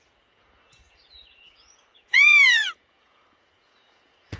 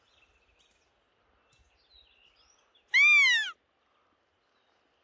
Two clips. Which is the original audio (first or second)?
second